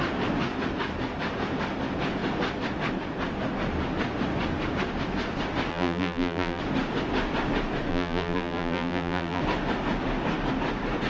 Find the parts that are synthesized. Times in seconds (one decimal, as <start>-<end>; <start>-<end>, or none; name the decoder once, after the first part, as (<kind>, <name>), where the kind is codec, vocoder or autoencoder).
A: 5.7-6.6 (vocoder, BigVGAN v2); 7.9-9.4